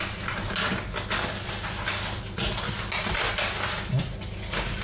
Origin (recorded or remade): recorded